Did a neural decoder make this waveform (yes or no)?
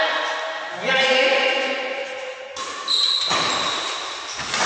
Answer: no